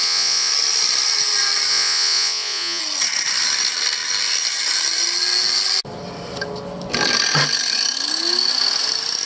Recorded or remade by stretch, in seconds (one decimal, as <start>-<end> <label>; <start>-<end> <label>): 0.0-0.5 remade; 0.5-1.7 recorded; 1.7-2.8 remade; 2.8-9.3 recorded